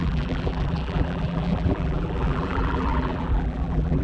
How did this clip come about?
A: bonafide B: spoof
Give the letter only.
B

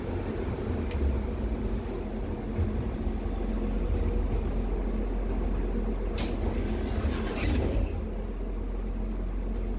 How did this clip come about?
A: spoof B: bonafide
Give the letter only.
B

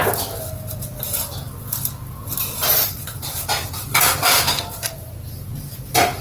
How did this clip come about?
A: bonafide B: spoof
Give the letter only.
A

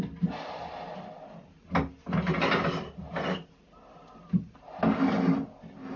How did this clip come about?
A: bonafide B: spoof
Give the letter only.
A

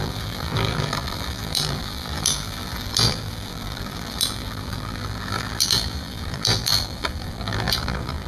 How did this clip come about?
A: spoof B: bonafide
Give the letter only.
A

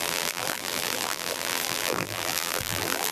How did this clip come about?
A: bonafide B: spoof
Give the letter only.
B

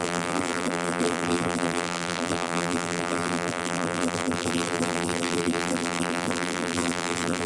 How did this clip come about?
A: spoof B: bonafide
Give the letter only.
A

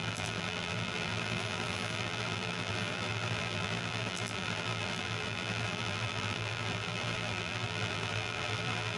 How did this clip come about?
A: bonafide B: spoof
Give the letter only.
B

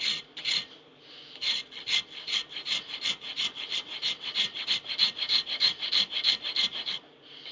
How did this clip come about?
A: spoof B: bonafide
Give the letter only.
A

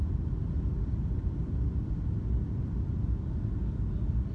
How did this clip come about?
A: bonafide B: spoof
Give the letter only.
A